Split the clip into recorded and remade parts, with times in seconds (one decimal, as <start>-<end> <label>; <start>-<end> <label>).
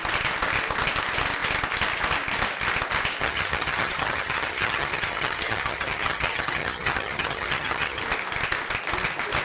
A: 0.0-3.2 recorded; 3.2-8.0 remade; 8.0-9.4 recorded